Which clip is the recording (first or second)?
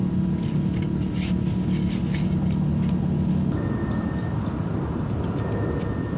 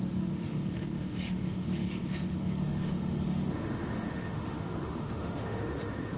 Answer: first